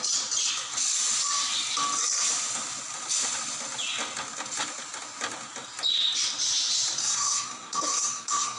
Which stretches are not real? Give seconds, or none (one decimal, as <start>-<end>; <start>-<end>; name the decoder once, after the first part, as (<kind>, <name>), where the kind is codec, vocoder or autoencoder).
7.0-8.6 (codec, SNAC)